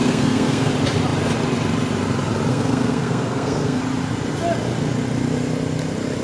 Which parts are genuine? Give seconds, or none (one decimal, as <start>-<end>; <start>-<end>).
0.7-2.5; 3.8-6.2